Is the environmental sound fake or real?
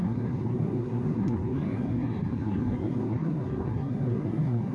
fake